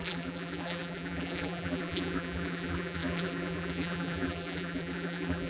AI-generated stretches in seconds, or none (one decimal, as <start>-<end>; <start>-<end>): 0.0-5.5